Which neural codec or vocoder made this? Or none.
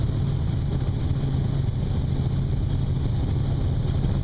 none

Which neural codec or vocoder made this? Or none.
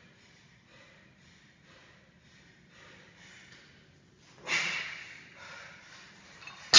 none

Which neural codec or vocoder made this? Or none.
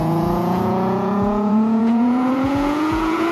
vocoder, Vocos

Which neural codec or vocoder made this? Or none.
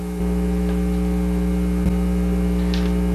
none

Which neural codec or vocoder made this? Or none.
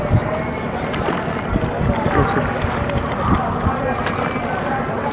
none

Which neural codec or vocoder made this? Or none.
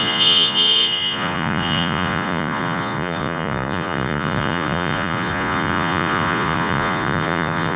vocoder, Vocos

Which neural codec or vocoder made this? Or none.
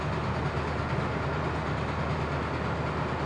none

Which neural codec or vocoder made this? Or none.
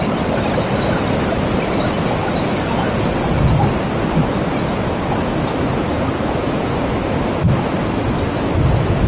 none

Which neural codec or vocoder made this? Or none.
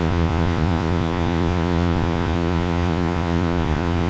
vocoder, Vocos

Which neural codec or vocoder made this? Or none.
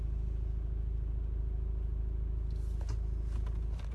none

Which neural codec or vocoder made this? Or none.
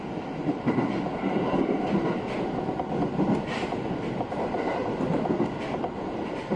none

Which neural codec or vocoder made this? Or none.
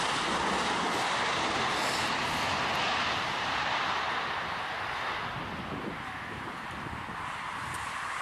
none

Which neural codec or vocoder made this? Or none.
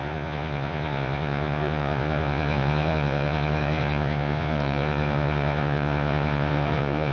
vocoder, Vocos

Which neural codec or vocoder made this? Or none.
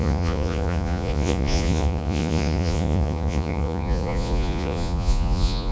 vocoder, Vocos